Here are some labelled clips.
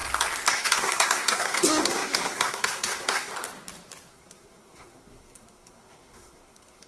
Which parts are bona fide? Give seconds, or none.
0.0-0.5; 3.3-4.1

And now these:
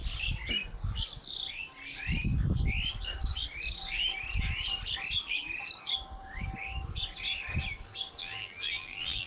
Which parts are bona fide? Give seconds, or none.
0.0-8.2

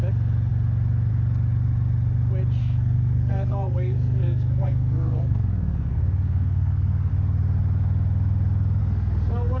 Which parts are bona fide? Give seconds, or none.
0.0-2.6; 7.1-8.8

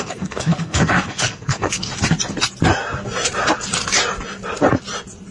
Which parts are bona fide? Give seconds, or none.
1.9-5.3

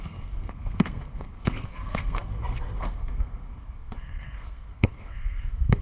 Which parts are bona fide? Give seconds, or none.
none

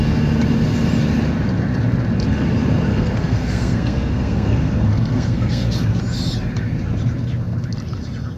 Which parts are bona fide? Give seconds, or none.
0.0-2.9; 6.0-8.4